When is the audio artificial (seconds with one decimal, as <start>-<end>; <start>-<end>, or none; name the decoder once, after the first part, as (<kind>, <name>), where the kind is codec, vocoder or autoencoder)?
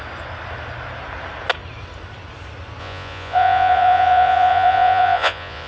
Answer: 2.8-5.7 (vocoder, Vocos)